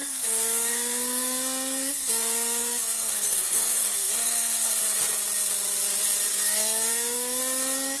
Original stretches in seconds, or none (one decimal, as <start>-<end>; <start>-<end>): 4.8-6.3; 7.4-8.0